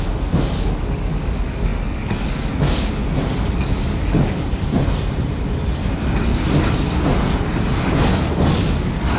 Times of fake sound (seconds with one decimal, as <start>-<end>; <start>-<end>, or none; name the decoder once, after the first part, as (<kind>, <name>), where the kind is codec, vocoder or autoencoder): 0.0-3.0 (codec, DAC); 3.6-4.7; 8.5-9.2